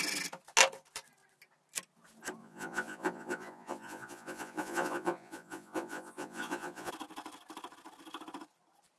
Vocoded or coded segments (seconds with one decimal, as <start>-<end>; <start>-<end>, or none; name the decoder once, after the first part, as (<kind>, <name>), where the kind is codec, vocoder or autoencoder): 2.4-6.9 (vocoder, Vocos)